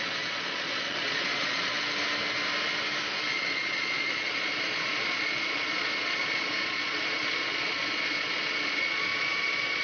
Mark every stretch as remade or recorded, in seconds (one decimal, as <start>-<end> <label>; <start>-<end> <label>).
0.0-1.7 remade; 1.7-3.3 recorded; 3.3-9.8 remade